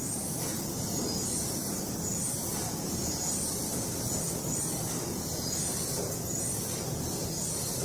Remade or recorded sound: recorded